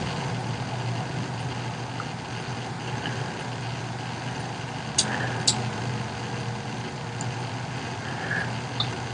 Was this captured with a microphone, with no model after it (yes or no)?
yes